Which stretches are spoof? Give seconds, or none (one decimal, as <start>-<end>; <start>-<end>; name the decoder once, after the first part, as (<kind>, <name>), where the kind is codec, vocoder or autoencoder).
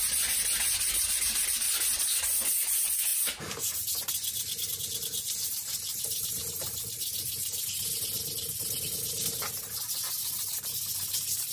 5.9-7.6 (vocoder, BigVGAN v2)